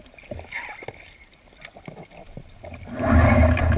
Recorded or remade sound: recorded